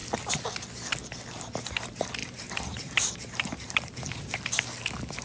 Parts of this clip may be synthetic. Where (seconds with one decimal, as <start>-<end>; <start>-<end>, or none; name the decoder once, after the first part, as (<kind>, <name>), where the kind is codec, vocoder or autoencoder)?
2.2-4.4 (vocoder, BigVGAN v2)